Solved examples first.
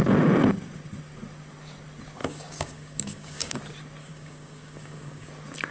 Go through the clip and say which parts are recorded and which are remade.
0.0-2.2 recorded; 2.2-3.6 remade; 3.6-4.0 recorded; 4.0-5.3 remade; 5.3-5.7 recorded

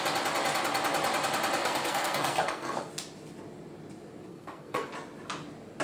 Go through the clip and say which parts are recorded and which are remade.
0.0-1.6 recorded; 1.6-2.9 remade; 2.9-4.3 recorded; 4.3-4.9 remade; 4.9-5.8 recorded

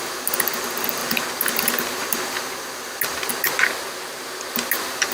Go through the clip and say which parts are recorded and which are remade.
0.0-5.1 recorded

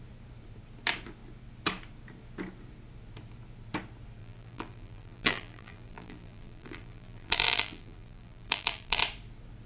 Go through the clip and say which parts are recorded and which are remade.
0.0-4.2 recorded; 4.2-9.0 remade; 9.0-9.7 recorded

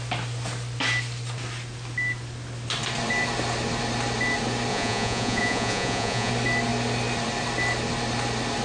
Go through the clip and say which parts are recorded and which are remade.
0.0-4.7 recorded; 4.7-6.3 remade; 6.3-8.6 recorded